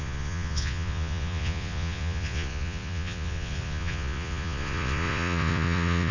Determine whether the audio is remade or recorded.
remade